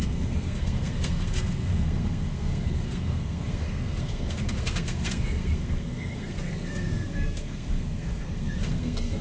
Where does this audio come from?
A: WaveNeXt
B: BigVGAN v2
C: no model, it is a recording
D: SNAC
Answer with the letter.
D